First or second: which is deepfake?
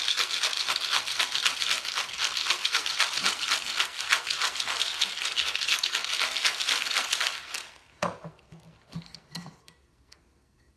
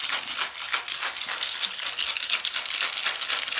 first